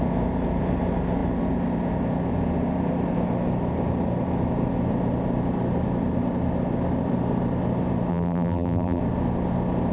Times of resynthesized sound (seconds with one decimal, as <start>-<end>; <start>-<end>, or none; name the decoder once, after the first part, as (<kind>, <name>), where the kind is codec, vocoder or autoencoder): 8.1-9.0 (vocoder, BigVGAN v2)